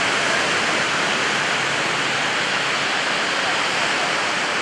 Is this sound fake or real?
real